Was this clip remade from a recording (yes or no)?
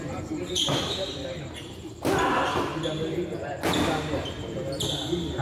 no